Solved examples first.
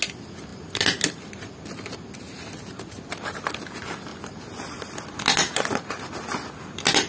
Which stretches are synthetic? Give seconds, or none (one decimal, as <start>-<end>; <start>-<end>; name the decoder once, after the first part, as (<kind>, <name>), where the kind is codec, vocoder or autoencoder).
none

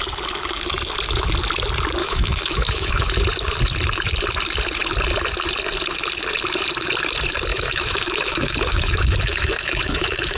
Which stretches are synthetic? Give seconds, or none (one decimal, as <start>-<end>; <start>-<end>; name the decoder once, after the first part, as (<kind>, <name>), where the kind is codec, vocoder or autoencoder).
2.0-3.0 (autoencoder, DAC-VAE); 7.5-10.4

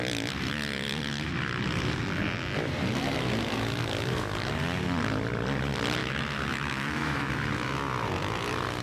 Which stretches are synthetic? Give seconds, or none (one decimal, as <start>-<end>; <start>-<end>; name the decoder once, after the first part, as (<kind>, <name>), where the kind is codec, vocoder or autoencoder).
6.0-7.3 (autoencoder, DAC-VAE)

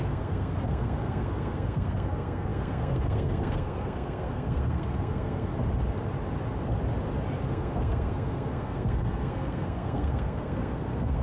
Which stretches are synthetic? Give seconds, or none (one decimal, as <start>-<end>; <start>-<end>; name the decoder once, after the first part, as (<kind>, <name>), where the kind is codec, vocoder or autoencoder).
0.0-5.5 (codec, SNAC); 7.5-11.2

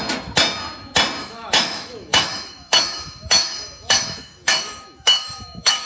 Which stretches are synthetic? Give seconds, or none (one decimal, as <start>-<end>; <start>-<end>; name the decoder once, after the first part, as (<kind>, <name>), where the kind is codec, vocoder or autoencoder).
1.2-5.9 (autoencoder, DAC-VAE)